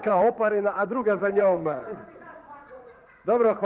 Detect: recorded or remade remade